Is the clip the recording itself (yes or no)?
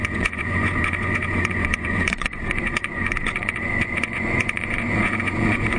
no